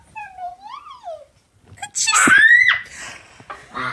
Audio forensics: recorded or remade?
recorded